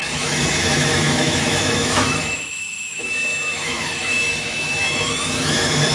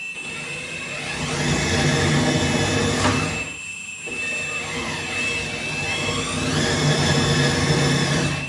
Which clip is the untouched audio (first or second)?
second